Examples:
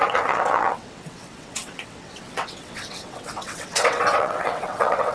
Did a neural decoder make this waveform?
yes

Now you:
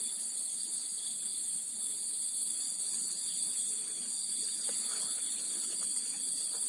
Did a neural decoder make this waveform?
yes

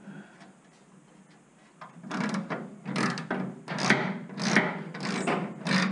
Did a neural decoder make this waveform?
no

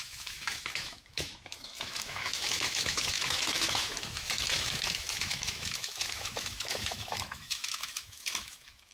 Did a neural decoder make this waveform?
yes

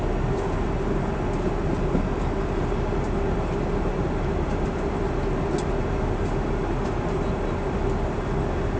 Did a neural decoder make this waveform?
no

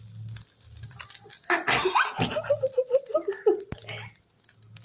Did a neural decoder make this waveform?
no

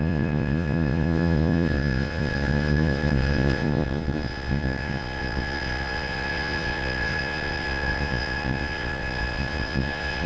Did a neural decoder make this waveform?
yes